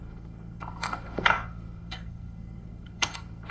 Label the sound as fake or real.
fake